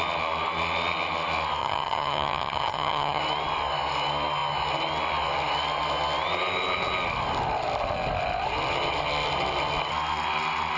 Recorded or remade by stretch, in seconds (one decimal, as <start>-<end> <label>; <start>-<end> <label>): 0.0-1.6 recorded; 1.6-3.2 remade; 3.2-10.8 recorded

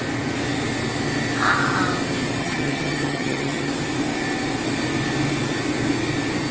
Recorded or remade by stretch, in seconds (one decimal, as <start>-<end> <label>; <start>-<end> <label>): 0.0-2.4 recorded; 2.4-3.7 remade; 3.7-6.5 recorded

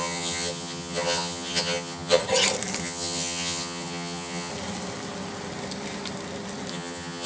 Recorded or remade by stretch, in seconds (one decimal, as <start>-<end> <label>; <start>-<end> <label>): 0.0-2.2 remade; 2.2-2.8 recorded; 2.8-4.5 remade; 4.5-6.7 recorded; 6.7-7.3 remade

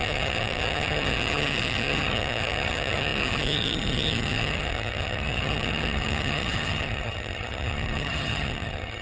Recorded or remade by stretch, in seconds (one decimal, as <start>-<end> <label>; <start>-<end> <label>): 0.0-9.0 remade